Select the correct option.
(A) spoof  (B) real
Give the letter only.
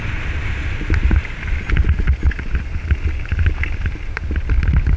B